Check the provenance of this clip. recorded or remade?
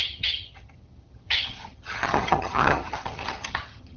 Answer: remade